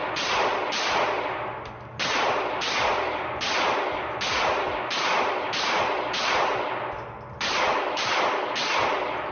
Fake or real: real